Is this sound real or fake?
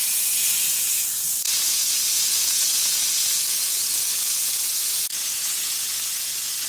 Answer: fake